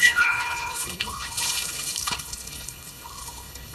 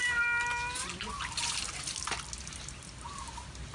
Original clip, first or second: second